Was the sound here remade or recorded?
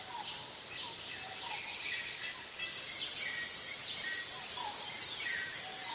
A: recorded